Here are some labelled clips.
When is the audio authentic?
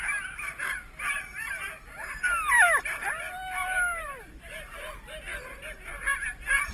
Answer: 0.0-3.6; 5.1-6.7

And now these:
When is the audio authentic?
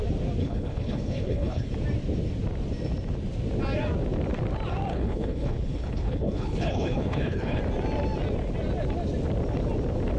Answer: 0.0-0.4; 1.7-4.9; 7.6-10.2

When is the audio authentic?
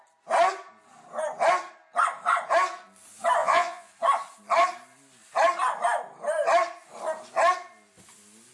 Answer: 0.0-3.4; 3.9-8.5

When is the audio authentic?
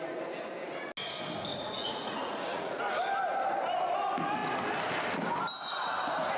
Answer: 0.0-1.5; 2.8-6.4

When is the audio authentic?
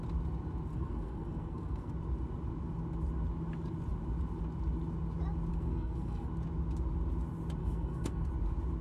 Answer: 0.0-0.7; 1.9-5.5; 6.3-7.6; 8.3-8.8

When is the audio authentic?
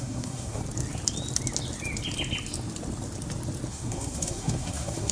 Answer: 0.6-3.7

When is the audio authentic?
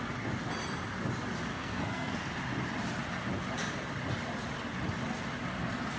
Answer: 0.0-1.5; 2.3-6.0